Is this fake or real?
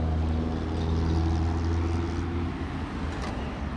real